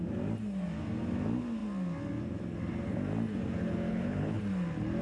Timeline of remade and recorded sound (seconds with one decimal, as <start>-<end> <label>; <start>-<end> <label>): 0.0-3.9 recorded; 3.9-4.4 remade; 4.4-5.0 recorded